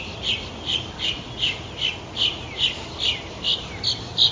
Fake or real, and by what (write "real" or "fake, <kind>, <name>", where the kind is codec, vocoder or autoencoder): real